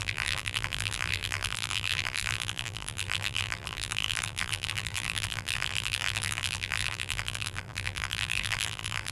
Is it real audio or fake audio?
fake